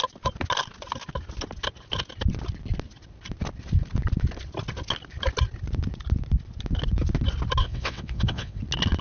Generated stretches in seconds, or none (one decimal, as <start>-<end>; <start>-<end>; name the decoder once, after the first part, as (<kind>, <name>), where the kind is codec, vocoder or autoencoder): 7.6-8.6 (vocoder, WaveNeXt)